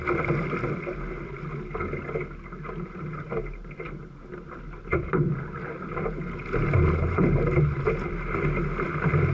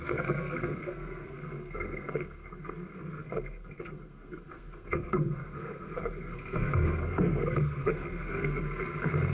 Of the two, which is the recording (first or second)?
first